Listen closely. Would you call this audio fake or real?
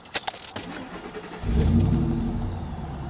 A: real